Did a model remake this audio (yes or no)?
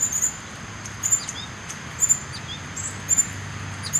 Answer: no